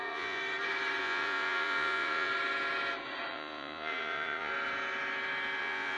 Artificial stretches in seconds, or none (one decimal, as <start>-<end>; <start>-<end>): 0.0-0.4; 1.0-2.3; 3.3-4.5; 5.6-6.0